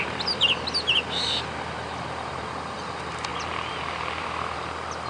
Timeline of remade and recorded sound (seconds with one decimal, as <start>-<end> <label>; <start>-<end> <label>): 0.0-5.1 recorded